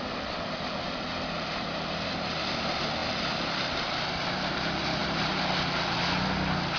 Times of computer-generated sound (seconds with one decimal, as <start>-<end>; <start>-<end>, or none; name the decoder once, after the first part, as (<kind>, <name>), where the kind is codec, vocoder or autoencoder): none